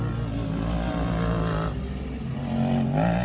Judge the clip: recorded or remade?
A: recorded